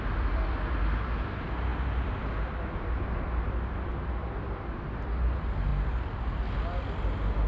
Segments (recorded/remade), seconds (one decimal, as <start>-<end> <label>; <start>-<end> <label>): 0.0-7.5 recorded